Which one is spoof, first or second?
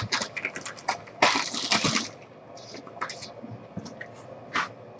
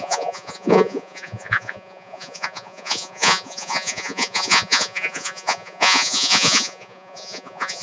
second